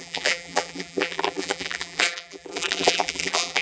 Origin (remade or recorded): remade